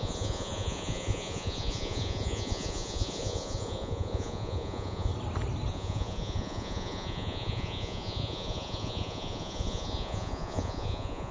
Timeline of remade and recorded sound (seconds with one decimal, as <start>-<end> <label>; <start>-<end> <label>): 0.0-5.1 remade; 5.1-5.7 recorded; 5.7-11.3 remade